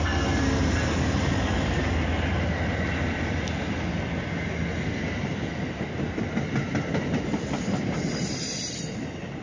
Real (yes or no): yes